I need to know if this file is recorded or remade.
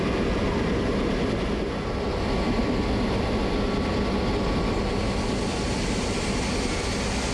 recorded